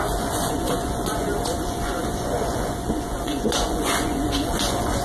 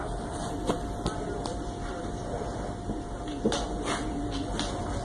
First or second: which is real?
second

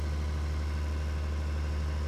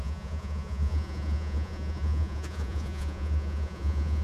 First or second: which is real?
first